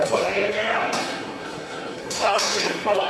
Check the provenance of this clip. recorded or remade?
remade